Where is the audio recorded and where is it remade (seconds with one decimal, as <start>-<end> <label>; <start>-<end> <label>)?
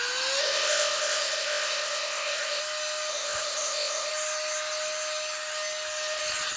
0.0-0.4 recorded; 0.4-2.6 remade; 2.6-3.1 recorded; 3.1-4.1 remade; 4.1-6.6 recorded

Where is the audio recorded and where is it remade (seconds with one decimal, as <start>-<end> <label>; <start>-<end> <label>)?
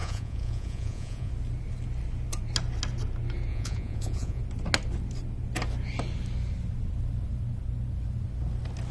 0.0-1.3 remade; 1.3-3.5 recorded; 3.5-4.4 remade; 4.4-8.9 recorded